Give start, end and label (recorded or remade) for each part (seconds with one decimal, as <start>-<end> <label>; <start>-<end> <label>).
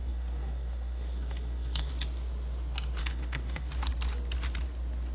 0.0-1.9 remade; 1.9-3.0 recorded; 3.0-3.7 remade; 3.7-5.1 recorded